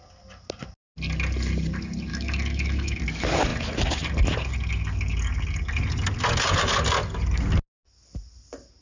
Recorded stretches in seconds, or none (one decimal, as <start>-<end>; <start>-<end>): 0.0-2.1; 3.0-8.8